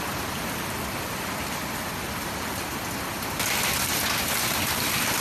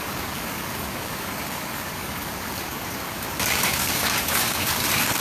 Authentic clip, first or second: first